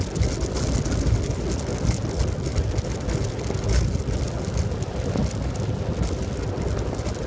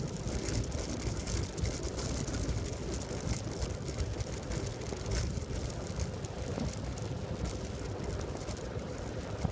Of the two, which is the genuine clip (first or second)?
first